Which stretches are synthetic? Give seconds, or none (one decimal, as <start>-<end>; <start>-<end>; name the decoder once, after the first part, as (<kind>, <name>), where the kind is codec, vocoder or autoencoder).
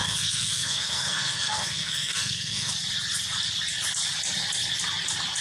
0.0-2.7 (codec, SNAC)